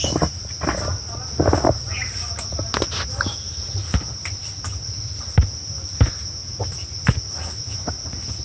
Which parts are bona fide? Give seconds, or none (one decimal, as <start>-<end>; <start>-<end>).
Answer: 0.0-8.4

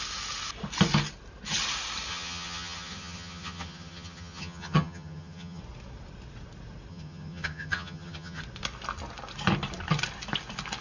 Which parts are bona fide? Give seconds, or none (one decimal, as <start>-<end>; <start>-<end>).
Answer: 0.0-2.1; 5.6-6.9; 8.4-10.8